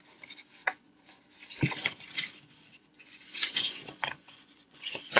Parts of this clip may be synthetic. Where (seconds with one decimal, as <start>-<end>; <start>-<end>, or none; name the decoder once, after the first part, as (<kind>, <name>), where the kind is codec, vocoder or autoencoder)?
0.6-1.2 (vocoder, Vocos); 1.8-5.2